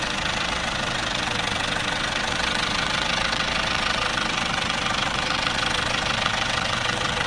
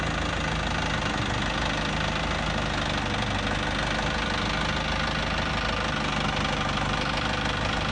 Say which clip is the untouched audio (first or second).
second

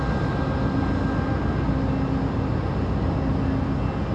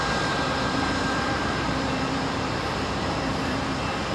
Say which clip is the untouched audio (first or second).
first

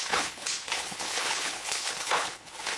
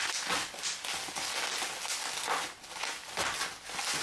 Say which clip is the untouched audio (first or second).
second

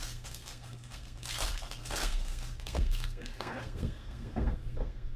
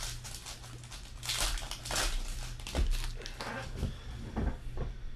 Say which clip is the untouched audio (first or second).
second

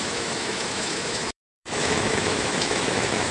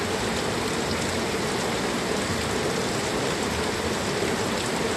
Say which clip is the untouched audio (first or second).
second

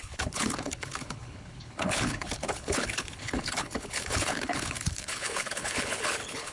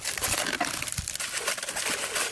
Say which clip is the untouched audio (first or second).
second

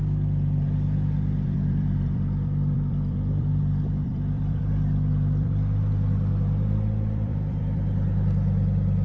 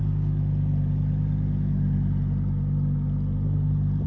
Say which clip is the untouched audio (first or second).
second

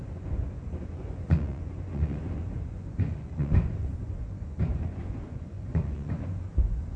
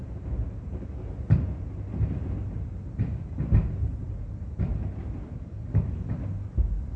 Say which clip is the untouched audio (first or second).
second